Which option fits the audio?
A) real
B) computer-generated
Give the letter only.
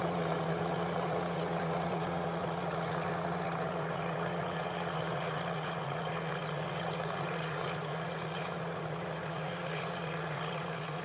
B